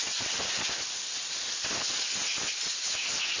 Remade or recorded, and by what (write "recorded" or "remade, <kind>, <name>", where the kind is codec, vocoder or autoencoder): recorded